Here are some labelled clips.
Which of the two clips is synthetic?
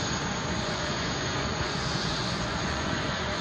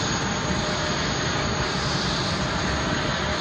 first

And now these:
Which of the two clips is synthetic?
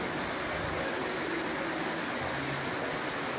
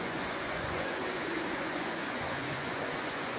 second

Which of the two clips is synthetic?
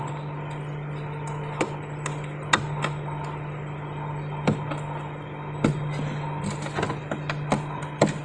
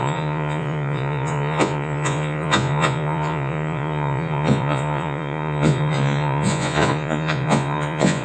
second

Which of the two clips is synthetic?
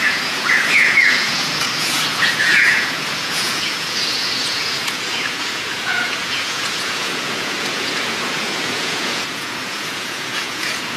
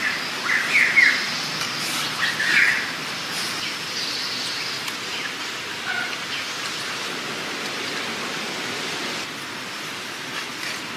first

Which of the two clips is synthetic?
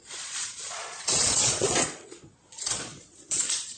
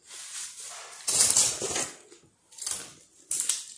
first